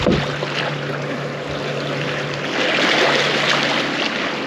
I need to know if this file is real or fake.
real